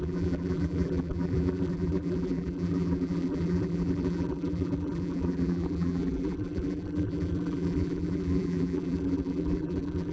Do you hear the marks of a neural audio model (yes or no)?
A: yes